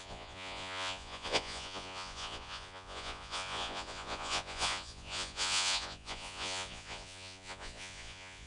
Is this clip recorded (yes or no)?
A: no